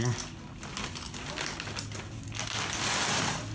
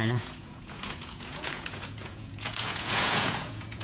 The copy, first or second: second